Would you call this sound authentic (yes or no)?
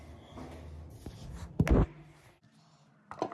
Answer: yes